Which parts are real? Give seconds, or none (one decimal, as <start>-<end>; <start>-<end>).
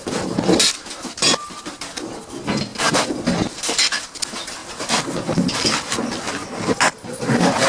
0.0-7.7